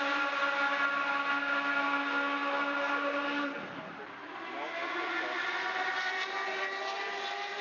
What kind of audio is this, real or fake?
real